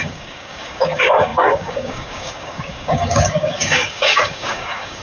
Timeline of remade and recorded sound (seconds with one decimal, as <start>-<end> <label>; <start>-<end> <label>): 0.0-5.0 remade